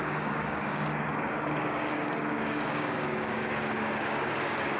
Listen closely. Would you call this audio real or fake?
fake